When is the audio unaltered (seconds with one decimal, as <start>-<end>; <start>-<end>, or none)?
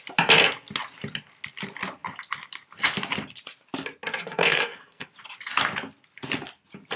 0.0-4.3; 5.1-7.0